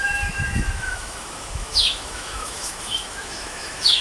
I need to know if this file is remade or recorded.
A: remade